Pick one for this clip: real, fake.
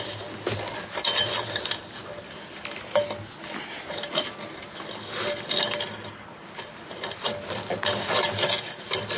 real